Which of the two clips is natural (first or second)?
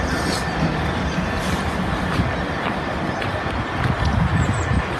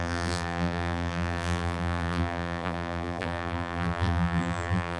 first